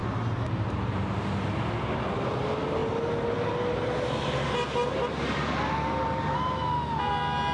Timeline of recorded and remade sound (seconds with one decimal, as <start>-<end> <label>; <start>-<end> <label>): 0.0-7.5 recorded